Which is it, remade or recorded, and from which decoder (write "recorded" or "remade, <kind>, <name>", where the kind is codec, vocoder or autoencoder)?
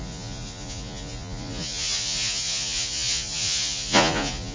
remade, vocoder, Vocos